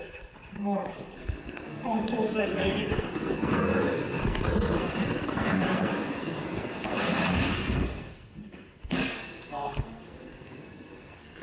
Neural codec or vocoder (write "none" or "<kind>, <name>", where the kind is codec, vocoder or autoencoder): codec, SNAC